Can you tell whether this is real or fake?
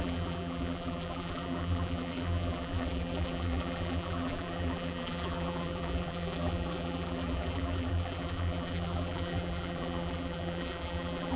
fake